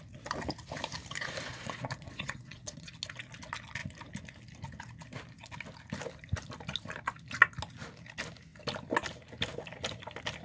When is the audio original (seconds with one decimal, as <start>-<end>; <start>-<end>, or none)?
0.0-1.5; 2.9-10.4